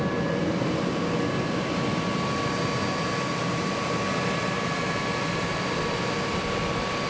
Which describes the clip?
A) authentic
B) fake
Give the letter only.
A